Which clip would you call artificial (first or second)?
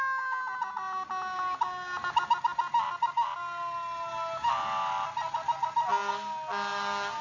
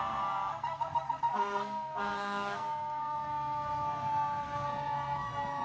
second